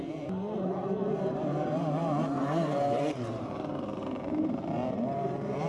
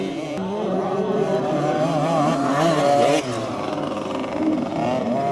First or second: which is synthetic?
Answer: first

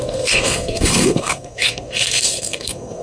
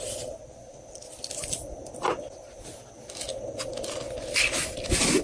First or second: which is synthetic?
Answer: first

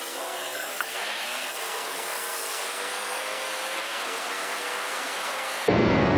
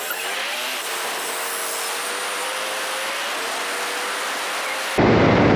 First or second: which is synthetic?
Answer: first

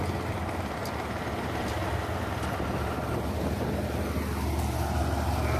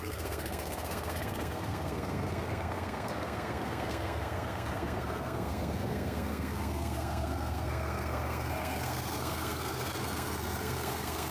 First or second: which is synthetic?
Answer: second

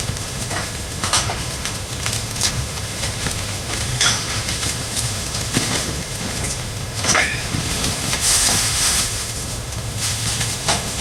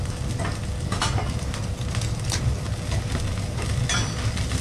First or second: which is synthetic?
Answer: first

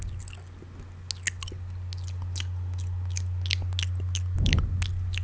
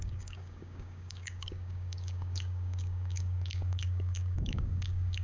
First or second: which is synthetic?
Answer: second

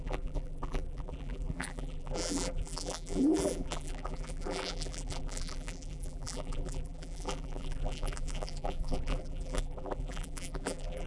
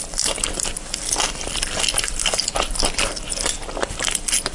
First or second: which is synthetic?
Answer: first